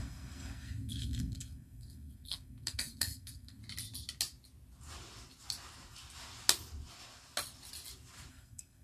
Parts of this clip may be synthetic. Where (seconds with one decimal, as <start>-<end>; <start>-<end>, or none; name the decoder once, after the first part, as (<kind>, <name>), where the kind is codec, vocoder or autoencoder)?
0.0-3.6 (codec, SNAC); 8.3-8.8